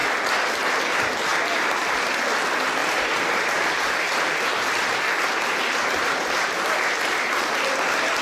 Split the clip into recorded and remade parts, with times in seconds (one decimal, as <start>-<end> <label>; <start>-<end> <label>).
0.0-1.3 recorded; 1.3-2.0 remade; 2.0-2.8 recorded; 2.8-7.7 remade; 7.7-8.2 recorded